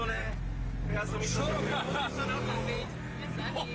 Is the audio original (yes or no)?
yes